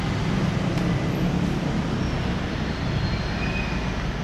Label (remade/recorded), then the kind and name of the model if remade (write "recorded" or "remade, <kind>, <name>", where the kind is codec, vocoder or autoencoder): recorded